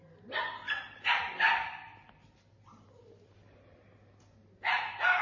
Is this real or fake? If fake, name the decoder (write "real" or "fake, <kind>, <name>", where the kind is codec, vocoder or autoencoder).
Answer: real